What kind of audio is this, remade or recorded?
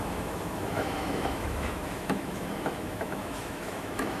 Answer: remade